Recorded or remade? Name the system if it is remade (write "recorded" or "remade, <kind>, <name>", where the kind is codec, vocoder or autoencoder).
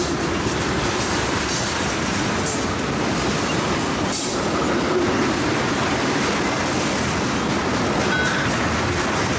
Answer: recorded